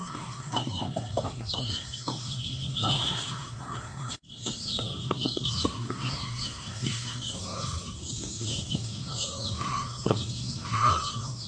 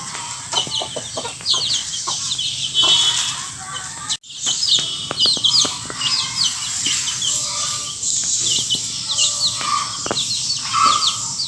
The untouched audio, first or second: second